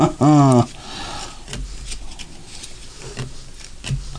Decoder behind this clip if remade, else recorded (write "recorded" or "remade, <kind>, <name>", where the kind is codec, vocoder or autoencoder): recorded